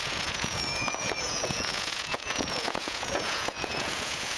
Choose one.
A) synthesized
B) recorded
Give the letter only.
A